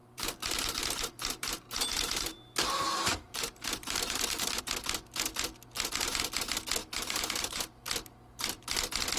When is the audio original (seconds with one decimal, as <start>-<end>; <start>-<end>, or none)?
4.6-6.8; 7.8-9.2